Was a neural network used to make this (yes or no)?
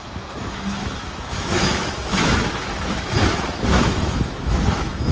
yes